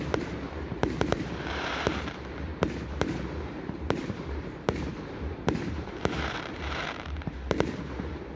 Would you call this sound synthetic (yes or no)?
yes